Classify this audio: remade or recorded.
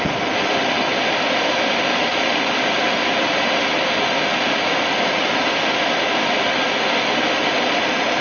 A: recorded